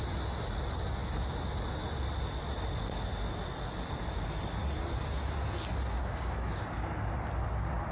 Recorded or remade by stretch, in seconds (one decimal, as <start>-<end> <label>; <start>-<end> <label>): 0.0-6.0 recorded; 6.0-6.6 remade; 6.6-7.9 recorded